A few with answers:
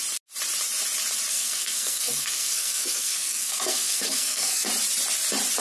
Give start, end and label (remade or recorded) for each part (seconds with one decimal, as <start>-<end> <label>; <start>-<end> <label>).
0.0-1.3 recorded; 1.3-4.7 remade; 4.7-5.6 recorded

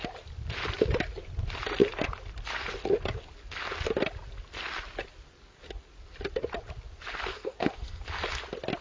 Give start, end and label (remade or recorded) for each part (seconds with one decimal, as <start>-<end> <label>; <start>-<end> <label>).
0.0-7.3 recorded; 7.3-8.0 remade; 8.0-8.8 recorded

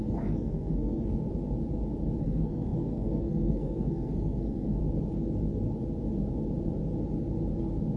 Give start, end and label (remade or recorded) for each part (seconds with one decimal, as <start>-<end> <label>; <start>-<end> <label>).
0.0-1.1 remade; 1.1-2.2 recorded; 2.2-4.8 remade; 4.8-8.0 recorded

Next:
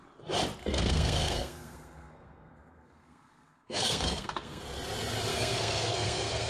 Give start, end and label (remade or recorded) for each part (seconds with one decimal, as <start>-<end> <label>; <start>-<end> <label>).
0.0-0.7 recorded; 0.7-4.6 remade; 4.6-5.3 recorded; 5.3-6.5 remade

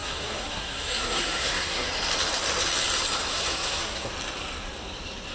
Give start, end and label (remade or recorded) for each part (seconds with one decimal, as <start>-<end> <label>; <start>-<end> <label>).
0.0-1.9 remade; 1.9-3.3 recorded; 3.3-4.1 remade; 4.1-5.3 recorded

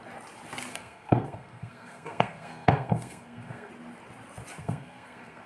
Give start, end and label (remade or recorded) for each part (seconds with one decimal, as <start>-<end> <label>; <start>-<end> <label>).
0.0-0.7 recorded; 0.7-3.7 remade; 3.7-4.6 recorded; 4.6-5.5 remade